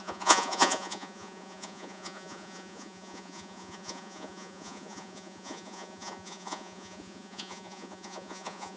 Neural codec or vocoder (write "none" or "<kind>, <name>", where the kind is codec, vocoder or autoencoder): vocoder, Vocos